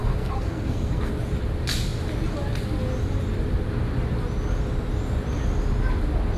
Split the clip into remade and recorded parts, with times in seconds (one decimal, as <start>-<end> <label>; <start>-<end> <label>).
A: 0.0-1.1 remade; 1.1-6.4 recorded